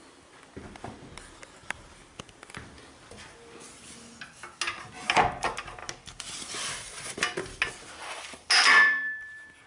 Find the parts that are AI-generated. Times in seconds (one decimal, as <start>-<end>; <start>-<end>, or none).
none